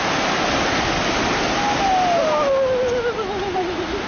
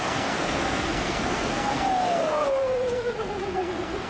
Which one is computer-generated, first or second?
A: second